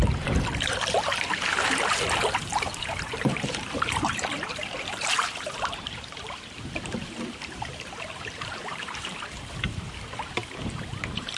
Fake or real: fake